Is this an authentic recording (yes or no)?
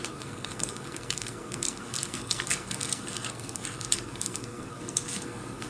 no